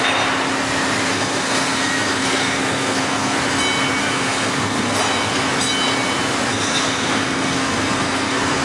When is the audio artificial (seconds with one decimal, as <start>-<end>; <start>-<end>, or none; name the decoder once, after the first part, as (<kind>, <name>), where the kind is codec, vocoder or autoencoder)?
1.1-3.4 (codec, SNAC); 4.0-5.0; 6.5-8.6